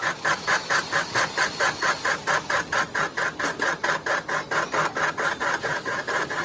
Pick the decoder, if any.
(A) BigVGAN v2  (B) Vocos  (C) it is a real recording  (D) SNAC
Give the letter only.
C